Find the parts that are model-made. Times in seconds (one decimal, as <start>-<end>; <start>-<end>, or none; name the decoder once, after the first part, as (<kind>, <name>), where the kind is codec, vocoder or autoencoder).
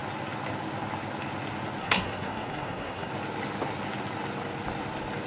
1.8-3.1 (codec, SNAC)